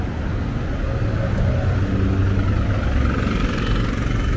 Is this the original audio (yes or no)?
yes